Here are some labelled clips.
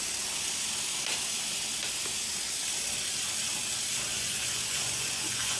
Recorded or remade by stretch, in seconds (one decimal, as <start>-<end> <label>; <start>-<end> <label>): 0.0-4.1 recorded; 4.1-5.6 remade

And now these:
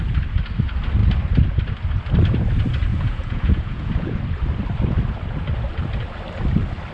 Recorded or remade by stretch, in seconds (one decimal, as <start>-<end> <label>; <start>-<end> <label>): 0.0-2.9 recorded; 2.9-4.2 remade; 4.2-6.9 recorded

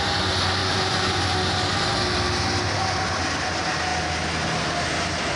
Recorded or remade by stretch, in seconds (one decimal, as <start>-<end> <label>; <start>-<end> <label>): 0.0-0.6 recorded; 0.6-1.2 remade; 1.2-5.4 recorded